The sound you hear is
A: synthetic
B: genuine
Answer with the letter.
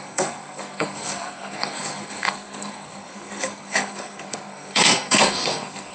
A